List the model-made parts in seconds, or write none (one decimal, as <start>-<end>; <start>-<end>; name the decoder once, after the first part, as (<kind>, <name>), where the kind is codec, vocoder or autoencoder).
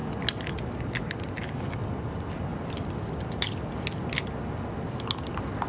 none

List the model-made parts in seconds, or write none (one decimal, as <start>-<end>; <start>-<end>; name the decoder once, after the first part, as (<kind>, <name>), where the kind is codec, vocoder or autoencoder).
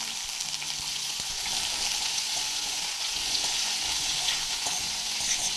0.9-1.5 (vocoder, Vocos); 2.0-5.6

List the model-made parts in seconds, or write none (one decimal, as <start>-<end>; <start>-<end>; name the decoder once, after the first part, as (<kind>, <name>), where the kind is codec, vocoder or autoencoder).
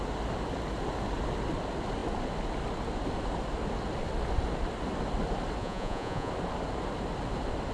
5.6-6.3 (vocoder, Vocos)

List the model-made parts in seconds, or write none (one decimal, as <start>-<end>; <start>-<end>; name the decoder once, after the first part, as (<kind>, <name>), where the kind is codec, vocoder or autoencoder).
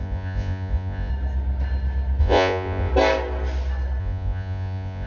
0.0-1.1 (vocoder, Vocos); 2.2-2.9; 4.0-5.1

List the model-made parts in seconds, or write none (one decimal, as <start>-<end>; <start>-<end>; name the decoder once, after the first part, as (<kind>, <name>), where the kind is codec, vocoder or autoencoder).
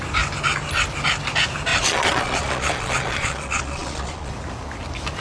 1.7-4.3 (vocoder, Vocos)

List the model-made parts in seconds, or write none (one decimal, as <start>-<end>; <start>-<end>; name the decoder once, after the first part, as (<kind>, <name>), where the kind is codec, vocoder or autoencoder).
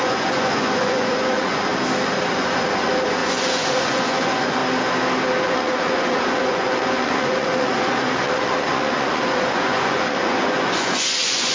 0.0-1.7 (vocoder, Vocos); 2.3-4.6; 5.4-11.5